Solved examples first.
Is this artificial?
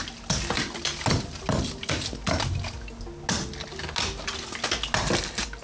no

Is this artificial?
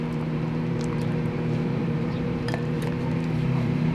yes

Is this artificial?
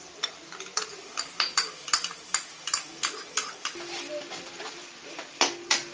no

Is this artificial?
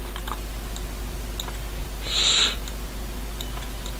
no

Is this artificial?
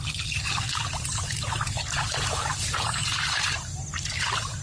no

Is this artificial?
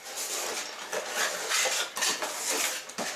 no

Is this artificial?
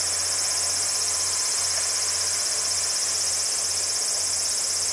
no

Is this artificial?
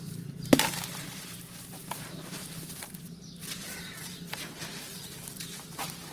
yes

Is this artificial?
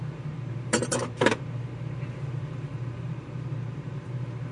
yes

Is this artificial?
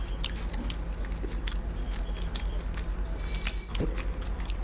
no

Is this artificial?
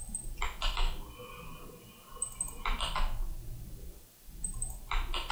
no